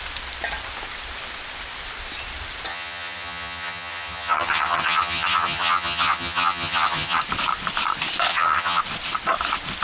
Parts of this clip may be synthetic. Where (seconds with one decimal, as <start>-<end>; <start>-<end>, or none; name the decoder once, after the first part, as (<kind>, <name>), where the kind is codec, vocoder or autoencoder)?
2.7-7.2 (vocoder, HiFi-GAN); 8.3-8.8